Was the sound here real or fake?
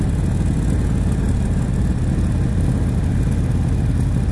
real